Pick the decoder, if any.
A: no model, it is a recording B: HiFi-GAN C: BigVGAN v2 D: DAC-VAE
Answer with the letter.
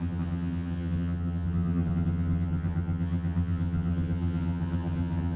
B